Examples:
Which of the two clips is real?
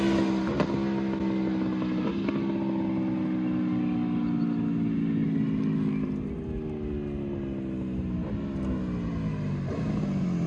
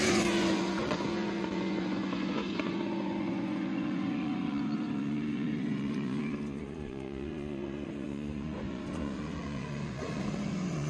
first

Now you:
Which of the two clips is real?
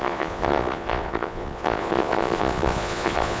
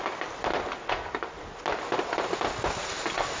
second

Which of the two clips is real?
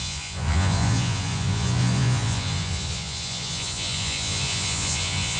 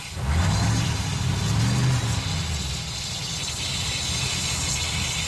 second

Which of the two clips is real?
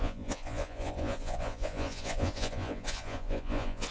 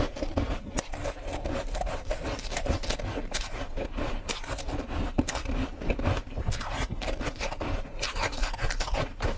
second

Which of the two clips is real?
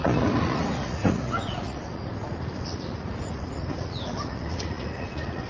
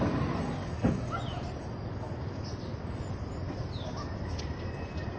second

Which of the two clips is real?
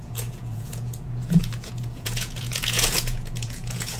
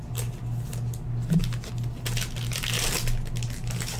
second